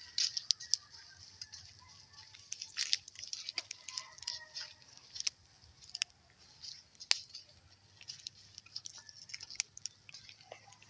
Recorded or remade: recorded